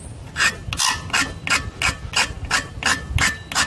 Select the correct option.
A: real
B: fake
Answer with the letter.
A